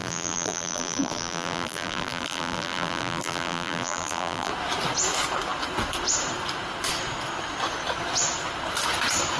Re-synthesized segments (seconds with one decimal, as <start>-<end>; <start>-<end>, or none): 0.0-4.5